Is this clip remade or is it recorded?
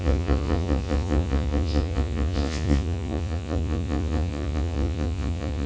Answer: remade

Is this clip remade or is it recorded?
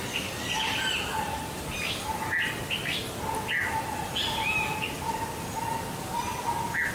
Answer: recorded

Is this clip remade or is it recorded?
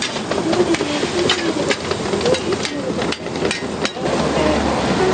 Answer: recorded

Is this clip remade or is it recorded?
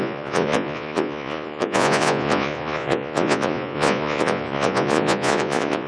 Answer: remade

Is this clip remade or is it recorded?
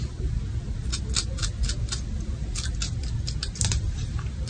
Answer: recorded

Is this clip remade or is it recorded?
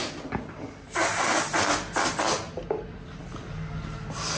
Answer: recorded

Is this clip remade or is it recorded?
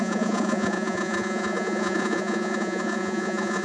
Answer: remade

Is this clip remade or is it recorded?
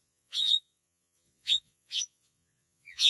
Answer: remade